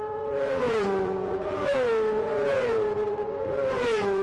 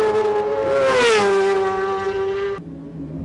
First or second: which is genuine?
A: second